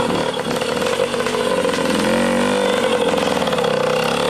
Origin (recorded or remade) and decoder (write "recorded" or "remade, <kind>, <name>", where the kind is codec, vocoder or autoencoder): recorded